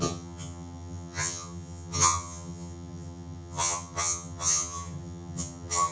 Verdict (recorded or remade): remade